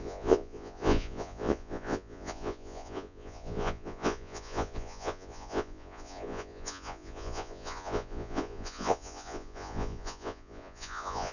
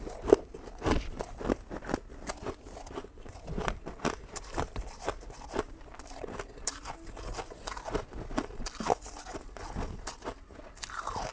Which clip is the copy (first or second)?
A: first